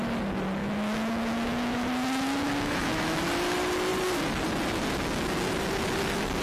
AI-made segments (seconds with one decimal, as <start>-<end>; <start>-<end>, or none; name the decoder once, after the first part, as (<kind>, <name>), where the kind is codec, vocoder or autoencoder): 0.6-3.2 (autoencoder, DAC-VAE)